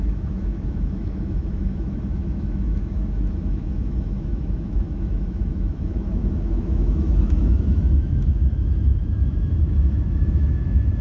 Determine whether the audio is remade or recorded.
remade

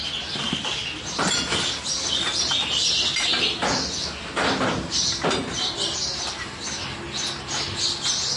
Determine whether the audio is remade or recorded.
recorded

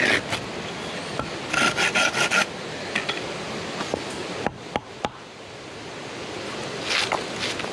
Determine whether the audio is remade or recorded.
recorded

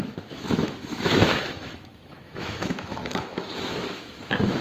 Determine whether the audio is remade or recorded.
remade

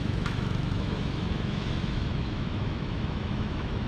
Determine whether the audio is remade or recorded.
remade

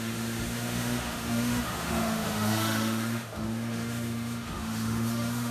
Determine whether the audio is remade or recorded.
remade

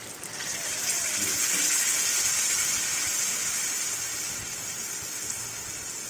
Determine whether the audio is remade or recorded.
recorded